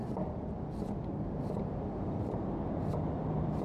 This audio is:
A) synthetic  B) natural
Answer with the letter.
B